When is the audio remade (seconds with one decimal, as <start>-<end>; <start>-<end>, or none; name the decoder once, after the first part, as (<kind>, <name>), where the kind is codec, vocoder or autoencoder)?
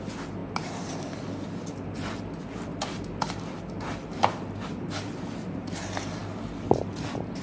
none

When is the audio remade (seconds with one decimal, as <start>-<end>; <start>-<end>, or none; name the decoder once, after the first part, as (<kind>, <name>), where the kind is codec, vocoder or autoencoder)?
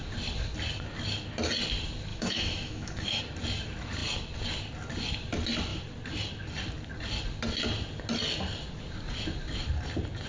2.1-3.2 (autoencoder, DAC-VAE)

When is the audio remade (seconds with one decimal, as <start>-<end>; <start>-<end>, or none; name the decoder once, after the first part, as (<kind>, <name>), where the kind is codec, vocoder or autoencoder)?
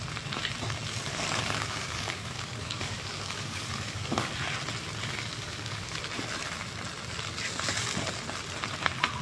1.1-4.3 (codec, DAC); 5.0-6.0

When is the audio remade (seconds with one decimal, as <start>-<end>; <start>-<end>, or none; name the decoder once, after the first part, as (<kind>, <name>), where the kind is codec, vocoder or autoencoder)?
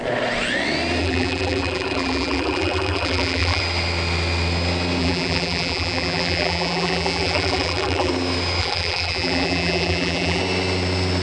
1.0-3.6 (vocoder, BigVGAN v2); 5.0-8.1; 8.6-10.4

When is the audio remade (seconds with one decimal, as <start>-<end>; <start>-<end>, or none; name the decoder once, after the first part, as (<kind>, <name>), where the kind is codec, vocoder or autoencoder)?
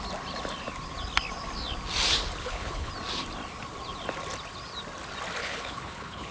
2.4-2.9 (codec, HILCodec); 5.4-6.3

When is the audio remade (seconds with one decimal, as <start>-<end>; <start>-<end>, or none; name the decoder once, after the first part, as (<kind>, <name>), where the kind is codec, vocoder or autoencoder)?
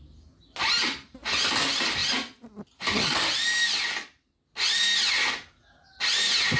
none